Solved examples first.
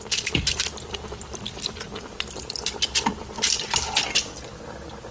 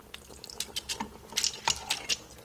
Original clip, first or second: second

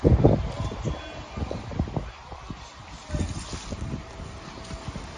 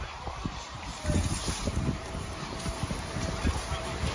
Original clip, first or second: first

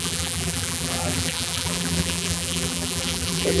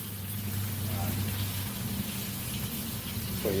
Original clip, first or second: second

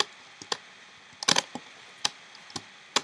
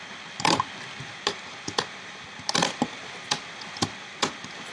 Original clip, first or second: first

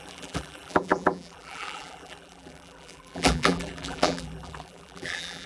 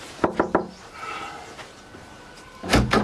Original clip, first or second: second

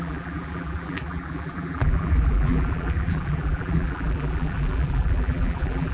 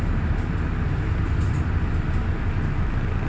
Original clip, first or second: second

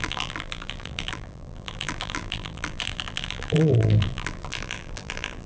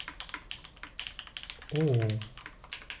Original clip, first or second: second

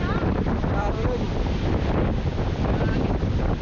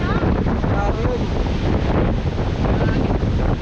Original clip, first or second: second